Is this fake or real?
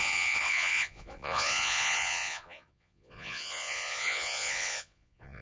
fake